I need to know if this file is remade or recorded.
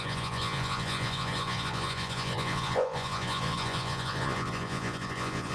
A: remade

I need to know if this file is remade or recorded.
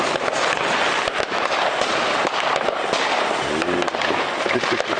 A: recorded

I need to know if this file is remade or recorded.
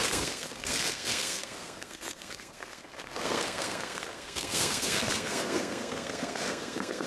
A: remade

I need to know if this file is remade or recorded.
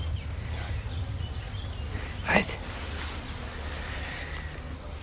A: recorded